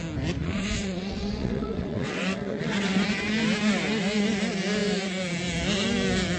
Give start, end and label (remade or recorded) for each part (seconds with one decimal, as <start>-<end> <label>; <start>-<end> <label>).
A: 0.0-0.4 recorded; 0.4-3.0 remade; 3.0-6.4 recorded